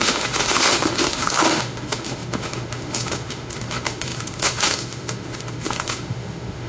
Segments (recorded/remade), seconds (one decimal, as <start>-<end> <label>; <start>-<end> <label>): 0.0-6.7 remade